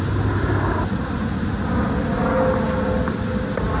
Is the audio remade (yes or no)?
no